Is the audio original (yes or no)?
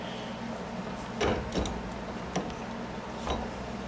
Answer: yes